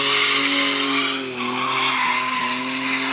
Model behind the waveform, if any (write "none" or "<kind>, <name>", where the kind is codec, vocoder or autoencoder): none